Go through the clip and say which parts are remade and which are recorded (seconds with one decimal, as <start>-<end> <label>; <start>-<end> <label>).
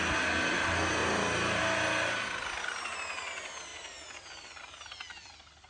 0.0-1.0 recorded; 1.0-1.6 remade; 1.6-3.7 recorded; 3.7-4.5 remade; 4.5-5.7 recorded